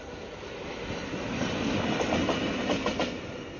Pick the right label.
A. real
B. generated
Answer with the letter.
A